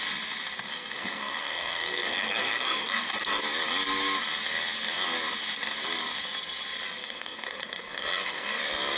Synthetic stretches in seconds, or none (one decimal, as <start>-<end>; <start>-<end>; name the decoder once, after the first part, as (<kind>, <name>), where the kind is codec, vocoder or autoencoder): 0.7-3.4 (codec, SNAC); 7.0-8.6